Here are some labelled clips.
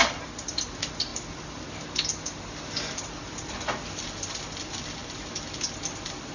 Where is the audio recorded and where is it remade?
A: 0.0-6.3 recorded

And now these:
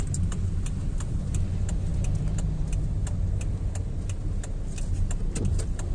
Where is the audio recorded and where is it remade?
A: 0.0-5.9 recorded

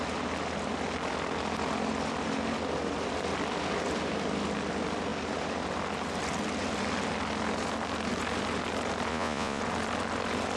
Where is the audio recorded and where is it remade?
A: 0.0-9.1 recorded; 9.1-9.6 remade; 9.6-10.6 recorded